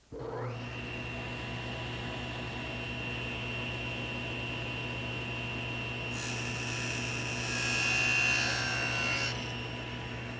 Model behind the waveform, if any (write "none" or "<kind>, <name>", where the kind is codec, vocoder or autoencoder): none